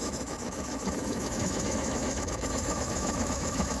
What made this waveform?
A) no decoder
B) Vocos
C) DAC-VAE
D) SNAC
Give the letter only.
C